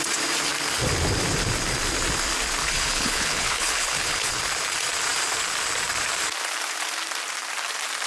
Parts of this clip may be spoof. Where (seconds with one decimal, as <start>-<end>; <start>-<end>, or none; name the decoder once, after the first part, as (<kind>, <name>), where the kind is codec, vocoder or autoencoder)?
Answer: 2.6-4.4 (codec, HILCodec)